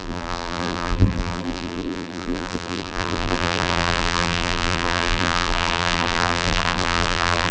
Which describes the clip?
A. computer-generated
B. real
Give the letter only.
A